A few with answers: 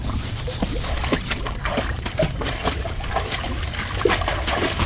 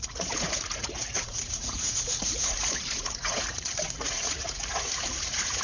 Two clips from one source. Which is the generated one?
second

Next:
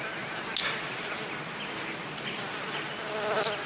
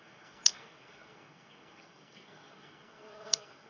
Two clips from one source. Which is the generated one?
second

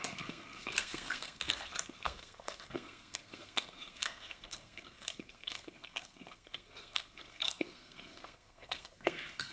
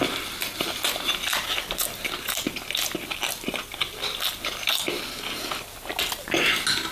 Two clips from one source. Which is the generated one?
first